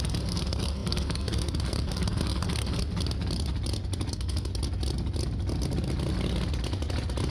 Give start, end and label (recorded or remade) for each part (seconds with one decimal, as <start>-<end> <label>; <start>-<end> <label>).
0.0-2.8 remade; 2.8-4.1 recorded; 4.1-4.5 remade; 4.5-7.3 recorded